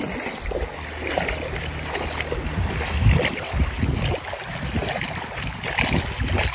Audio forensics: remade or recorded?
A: recorded